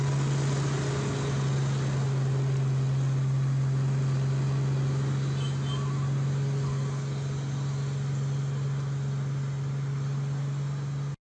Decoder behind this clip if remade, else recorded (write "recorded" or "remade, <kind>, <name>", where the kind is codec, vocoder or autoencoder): recorded